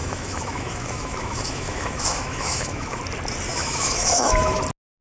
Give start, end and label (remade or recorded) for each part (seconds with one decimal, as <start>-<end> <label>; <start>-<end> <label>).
0.0-3.0 remade; 3.0-3.5 recorded; 3.5-4.6 remade; 4.6-5.0 recorded